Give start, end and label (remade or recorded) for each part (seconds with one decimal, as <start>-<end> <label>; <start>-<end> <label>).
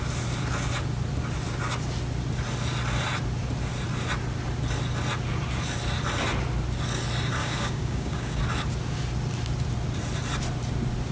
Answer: 0.0-7.4 recorded; 7.4-8.4 remade; 8.4-11.1 recorded